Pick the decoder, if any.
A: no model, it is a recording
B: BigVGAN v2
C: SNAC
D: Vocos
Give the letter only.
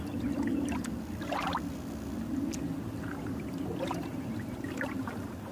A